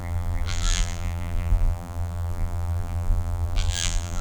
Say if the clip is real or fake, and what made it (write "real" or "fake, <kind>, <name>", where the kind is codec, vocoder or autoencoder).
fake, vocoder, BigVGAN v2